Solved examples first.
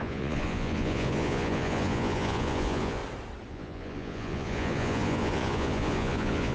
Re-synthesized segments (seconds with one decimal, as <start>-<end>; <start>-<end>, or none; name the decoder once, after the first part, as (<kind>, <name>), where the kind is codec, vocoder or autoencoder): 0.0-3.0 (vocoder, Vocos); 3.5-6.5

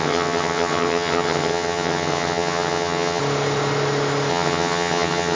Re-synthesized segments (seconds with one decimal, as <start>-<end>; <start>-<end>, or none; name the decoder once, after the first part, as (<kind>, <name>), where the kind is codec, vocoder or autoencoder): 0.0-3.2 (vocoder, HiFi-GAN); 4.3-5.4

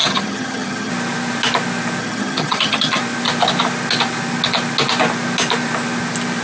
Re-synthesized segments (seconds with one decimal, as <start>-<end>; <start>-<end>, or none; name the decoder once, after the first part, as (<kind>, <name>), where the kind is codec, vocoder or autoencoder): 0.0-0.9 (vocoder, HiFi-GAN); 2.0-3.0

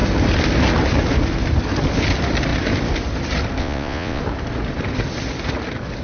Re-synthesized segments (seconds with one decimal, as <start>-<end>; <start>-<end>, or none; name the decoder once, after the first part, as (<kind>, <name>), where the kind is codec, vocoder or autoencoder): 3.6-4.2 (vocoder, Vocos)

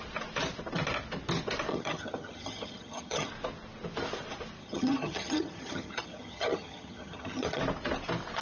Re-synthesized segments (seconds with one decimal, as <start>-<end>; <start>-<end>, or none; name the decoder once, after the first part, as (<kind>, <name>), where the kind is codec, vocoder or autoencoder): 1.7-3.3 (vocoder, HiFi-GAN); 4.6-7.6

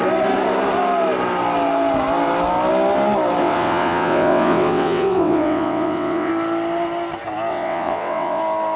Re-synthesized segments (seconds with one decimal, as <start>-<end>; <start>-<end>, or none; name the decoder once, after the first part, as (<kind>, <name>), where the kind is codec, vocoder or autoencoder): 3.4-6.3 (vocoder, WaveNeXt); 7.5-8.4